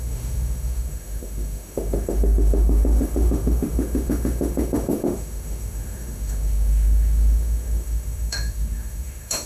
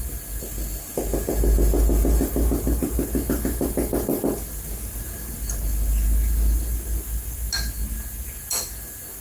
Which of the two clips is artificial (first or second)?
first